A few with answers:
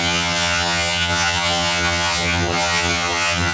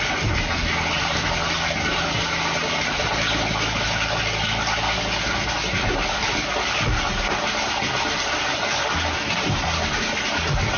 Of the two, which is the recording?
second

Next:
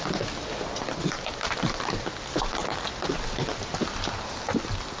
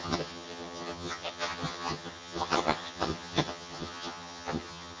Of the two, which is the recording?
first